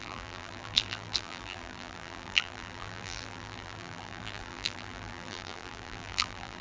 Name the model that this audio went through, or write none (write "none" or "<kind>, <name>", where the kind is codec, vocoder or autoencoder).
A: vocoder, BigVGAN v2